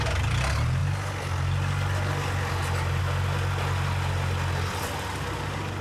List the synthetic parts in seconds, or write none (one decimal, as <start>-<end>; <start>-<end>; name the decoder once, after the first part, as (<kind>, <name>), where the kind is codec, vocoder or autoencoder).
none